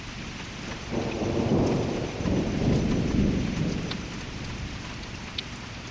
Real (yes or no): yes